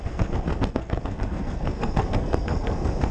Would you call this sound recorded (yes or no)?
no